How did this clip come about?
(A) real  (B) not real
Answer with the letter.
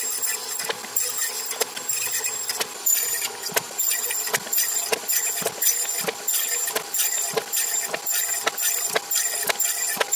A